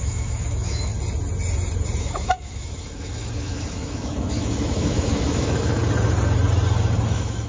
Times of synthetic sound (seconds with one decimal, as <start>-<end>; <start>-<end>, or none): 0.0-0.9; 2.0-5.8; 7.1-7.5